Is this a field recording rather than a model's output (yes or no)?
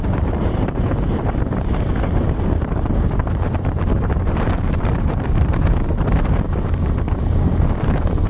no